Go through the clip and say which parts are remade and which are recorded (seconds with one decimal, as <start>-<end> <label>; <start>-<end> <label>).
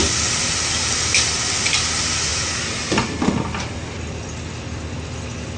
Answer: 0.0-5.6 recorded